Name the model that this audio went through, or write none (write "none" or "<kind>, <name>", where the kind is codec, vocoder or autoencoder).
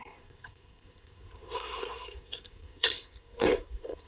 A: codec, SNAC